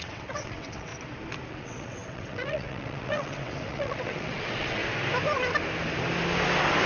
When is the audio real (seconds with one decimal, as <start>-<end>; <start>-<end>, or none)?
0.9-1.5; 4.8-6.9

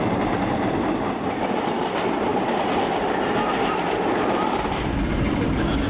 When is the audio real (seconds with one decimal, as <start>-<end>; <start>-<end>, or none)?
0.0-5.9

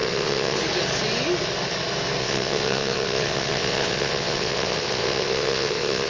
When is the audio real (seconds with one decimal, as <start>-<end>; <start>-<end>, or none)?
0.6-2.2